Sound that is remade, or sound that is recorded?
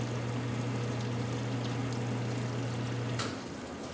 recorded